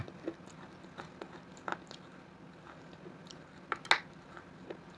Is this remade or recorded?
recorded